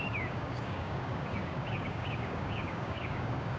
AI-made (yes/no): yes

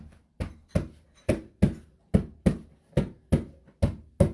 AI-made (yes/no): no